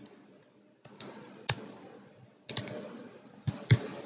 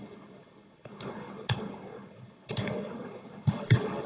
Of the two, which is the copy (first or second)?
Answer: second